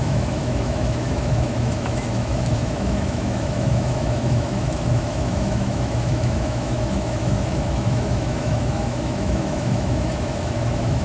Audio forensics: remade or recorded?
remade